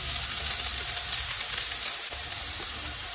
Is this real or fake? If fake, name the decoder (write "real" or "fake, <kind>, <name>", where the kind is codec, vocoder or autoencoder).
real